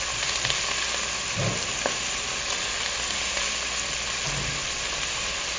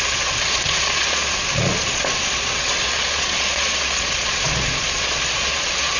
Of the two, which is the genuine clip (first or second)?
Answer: first